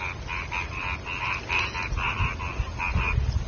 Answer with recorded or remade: recorded